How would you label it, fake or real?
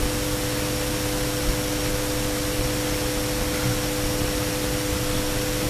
real